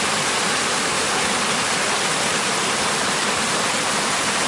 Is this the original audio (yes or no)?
yes